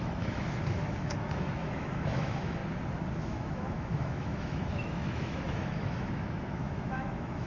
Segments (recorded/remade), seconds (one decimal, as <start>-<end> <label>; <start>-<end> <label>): 0.0-2.6 remade; 2.6-3.2 recorded; 3.2-7.5 remade